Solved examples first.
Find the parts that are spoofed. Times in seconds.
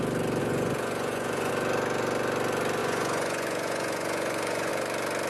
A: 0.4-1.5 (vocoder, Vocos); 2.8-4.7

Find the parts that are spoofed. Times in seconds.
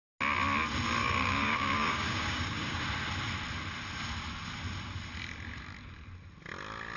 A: 1.0-2.8 (codec, DAC)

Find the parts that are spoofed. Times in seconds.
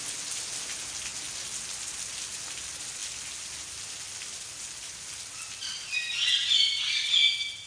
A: none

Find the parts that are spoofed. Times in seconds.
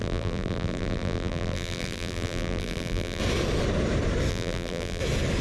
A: 0.0-3.2 (vocoder, BigVGAN v2); 4.3-5.0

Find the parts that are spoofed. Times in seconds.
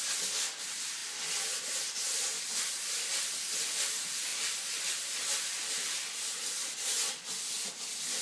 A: none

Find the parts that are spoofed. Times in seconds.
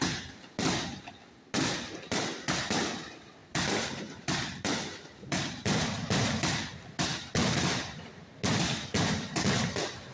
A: 3.4-5.4 (vocoder, BigVGAN v2)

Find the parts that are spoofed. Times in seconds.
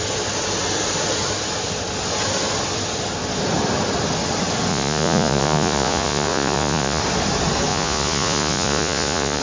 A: 4.7-7.0 (vocoder, Vocos); 7.7-9.4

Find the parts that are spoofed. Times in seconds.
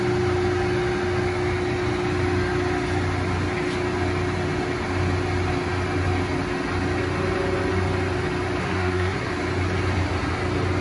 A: 8.6-9.3 (codec, SNAC)